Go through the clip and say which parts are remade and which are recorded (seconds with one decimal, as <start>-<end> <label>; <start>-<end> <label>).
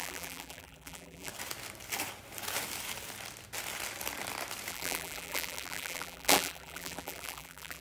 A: 0.0-1.3 remade; 1.3-4.7 recorded; 4.7-7.8 remade